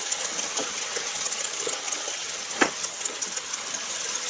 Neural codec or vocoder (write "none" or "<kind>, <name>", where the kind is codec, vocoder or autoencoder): vocoder, HiFi-GAN